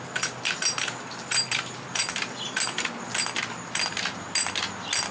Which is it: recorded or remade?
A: recorded